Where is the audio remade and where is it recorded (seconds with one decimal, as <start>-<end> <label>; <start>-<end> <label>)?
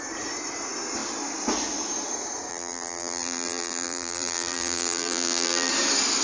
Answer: 0.0-2.5 recorded; 2.5-5.7 remade; 5.7-6.2 recorded